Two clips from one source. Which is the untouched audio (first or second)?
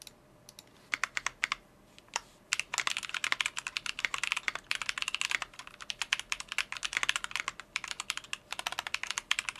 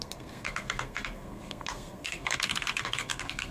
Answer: first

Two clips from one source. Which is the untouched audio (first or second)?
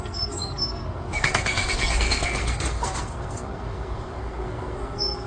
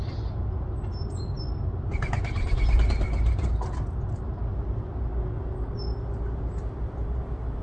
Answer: second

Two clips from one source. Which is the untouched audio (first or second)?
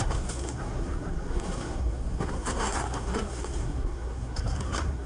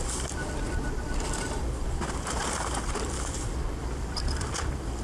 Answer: second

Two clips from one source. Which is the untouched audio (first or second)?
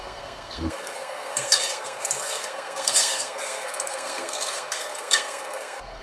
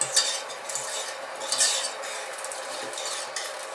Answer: second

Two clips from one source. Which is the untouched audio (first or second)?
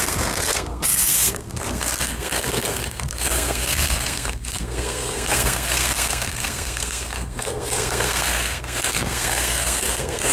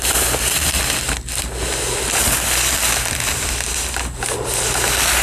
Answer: second